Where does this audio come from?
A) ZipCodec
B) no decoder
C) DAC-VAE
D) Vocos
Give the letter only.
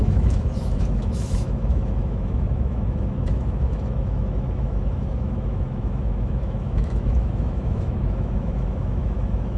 C